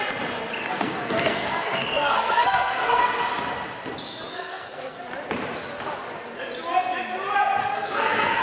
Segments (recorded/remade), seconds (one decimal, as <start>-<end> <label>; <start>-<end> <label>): 0.0-0.6 recorded; 0.6-3.2 remade; 3.2-4.3 recorded; 4.3-5.0 remade; 5.0-7.6 recorded; 7.6-8.4 remade